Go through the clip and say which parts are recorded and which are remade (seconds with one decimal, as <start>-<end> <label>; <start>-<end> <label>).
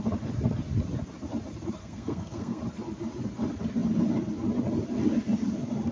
0.0-1.8 recorded; 1.8-2.6 remade; 2.6-5.9 recorded